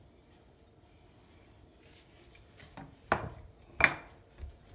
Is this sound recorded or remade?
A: recorded